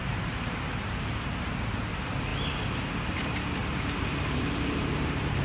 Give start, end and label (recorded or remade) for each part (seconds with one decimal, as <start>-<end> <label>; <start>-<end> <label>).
0.0-0.8 recorded; 0.8-2.3 remade; 2.3-2.9 recorded; 2.9-3.6 remade; 3.6-4.2 recorded; 4.2-5.4 remade